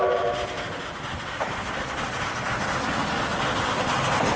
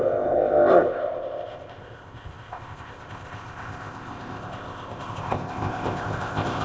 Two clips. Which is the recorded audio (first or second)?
first